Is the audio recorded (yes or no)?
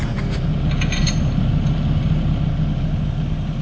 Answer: yes